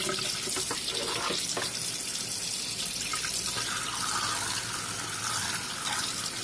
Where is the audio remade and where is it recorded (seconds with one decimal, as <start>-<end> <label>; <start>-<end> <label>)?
0.0-6.4 recorded